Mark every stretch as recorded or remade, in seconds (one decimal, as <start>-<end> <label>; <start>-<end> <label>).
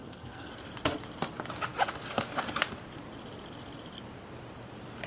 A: 0.0-0.5 remade; 0.5-5.1 recorded